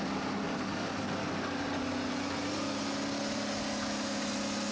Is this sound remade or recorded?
recorded